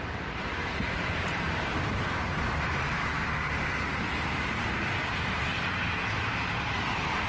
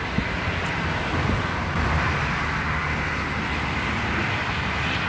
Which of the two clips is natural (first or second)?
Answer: second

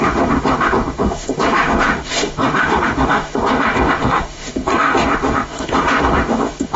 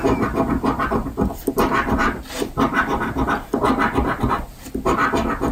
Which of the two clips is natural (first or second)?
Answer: second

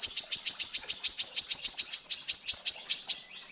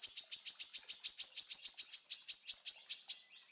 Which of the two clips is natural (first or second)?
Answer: second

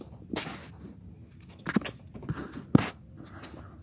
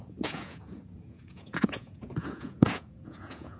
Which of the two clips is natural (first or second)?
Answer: first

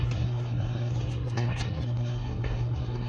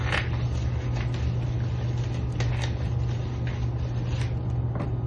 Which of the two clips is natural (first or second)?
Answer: second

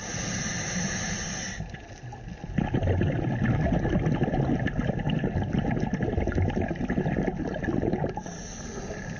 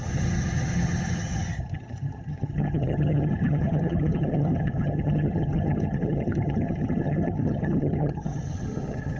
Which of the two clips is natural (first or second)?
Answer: first